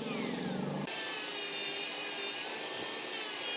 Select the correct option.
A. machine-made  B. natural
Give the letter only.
B